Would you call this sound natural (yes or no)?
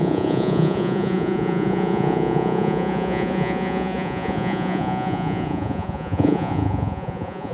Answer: no